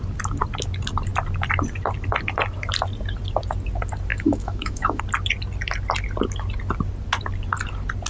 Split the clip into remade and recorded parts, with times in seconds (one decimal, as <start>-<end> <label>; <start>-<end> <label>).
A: 0.0-4.1 recorded; 4.1-5.0 remade; 5.0-8.1 recorded